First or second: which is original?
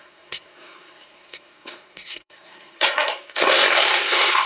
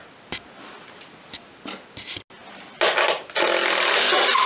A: second